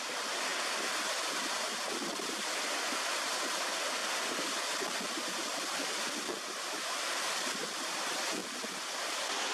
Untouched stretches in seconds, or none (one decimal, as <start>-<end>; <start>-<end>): 0.0-4.0; 4.7-9.5